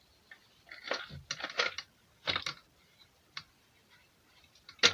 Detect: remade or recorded recorded